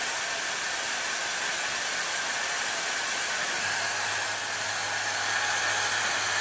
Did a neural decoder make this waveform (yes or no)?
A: no